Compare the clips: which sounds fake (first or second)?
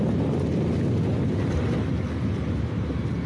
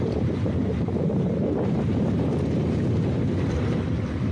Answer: second